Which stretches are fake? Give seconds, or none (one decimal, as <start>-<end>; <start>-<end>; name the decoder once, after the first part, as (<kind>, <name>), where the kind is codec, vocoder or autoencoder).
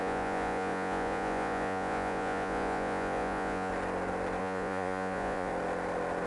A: 0.0-3.7 (vocoder, Vocos); 4.4-5.5